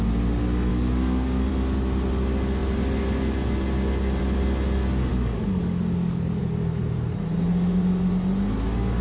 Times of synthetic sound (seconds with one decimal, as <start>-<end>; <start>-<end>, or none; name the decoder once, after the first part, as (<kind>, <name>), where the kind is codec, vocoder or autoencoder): 0.7-1.5 (codec, DAC); 5.1-6.4